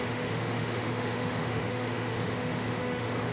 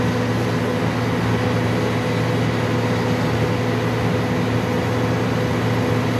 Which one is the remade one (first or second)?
first